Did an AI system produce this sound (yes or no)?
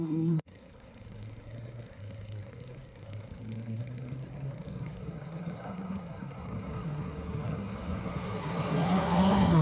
yes